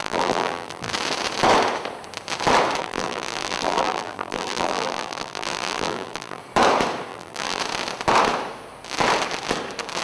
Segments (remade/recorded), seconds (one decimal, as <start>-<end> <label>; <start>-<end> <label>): 0.0-0.9 remade; 0.9-2.8 recorded; 2.8-6.4 remade; 6.4-7.1 recorded; 7.1-7.6 remade; 7.6-10.0 recorded